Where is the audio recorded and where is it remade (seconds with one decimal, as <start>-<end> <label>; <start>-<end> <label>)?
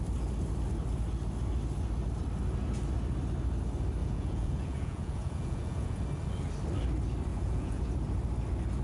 0.0-4.0 recorded; 4.0-6.0 remade; 6.0-7.3 recorded; 7.3-7.8 remade; 7.8-8.8 recorded